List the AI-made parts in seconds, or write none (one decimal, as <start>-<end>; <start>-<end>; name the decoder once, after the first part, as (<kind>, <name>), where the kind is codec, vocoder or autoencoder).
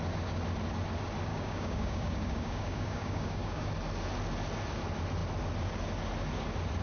1.3-3.7 (codec, DAC)